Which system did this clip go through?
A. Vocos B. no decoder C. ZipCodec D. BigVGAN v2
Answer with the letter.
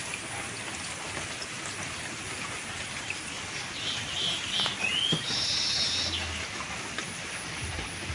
B